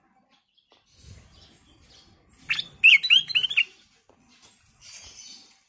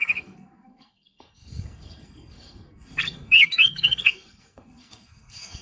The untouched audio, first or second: first